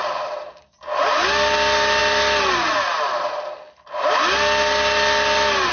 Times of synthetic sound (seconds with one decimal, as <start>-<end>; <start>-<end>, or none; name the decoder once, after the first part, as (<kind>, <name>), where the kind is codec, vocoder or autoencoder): none